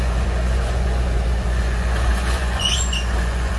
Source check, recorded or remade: remade